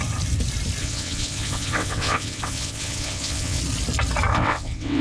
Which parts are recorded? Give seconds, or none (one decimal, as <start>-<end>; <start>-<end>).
0.0-0.8; 3.6-4.3